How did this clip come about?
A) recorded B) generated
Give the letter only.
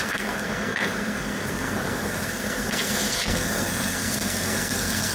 B